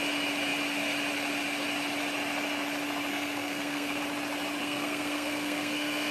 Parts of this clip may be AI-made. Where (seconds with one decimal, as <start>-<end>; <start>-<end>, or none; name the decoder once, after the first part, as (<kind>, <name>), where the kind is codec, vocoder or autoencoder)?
3.1-4.0 (codec, SNAC); 4.6-6.1

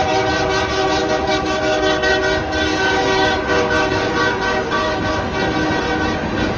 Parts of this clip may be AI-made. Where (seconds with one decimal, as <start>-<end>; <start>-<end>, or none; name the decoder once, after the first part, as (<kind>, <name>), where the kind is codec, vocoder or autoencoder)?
1.3-2.1 (codec, DAC); 2.7-5.1

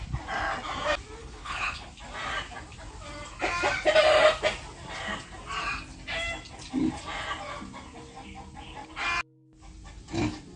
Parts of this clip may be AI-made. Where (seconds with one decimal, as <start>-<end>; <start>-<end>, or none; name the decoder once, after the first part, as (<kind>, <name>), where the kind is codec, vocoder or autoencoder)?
1.2-1.9 (codec, HILCodec)

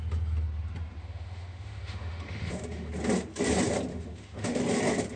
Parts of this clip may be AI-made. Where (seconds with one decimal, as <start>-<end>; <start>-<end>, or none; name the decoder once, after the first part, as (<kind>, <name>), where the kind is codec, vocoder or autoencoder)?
1.0-2.9 (autoencoder, DAC-VAE); 3.9-4.6

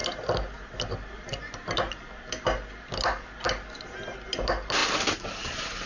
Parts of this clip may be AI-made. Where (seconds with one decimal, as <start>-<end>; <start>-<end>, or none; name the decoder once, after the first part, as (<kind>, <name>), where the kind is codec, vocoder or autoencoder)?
none

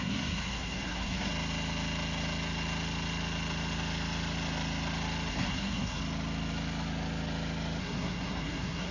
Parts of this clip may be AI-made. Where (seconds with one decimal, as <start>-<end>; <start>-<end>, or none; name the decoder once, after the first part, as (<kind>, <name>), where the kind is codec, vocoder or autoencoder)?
0.0-1.3 (codec, SNAC); 5.3-6.0; 7.8-8.9

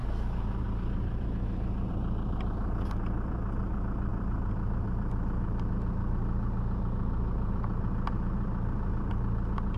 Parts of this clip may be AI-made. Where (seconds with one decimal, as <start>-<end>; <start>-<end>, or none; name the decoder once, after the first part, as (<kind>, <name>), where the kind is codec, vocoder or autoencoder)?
0.0-9.8 (vocoder, BigVGAN v2)